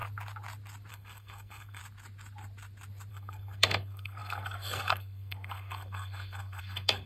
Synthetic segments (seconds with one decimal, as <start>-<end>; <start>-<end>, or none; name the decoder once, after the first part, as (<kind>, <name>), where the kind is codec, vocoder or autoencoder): 0.9-1.8 (codec, SNAC); 3.1-7.1